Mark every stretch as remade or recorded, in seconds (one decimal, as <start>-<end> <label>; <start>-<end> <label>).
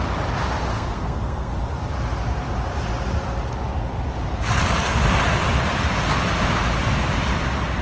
0.0-0.7 recorded; 0.7-1.5 remade; 1.5-7.8 recorded